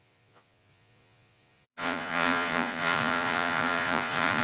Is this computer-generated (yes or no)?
yes